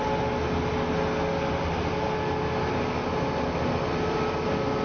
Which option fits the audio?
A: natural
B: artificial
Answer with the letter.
A